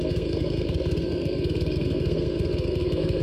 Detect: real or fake fake